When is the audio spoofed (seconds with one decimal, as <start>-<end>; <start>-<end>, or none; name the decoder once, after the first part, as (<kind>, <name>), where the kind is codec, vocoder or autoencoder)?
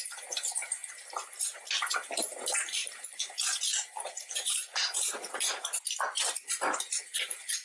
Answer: 0.0-0.8 (vocoder, BigVGAN v2); 2.2-4.6; 7.0-7.6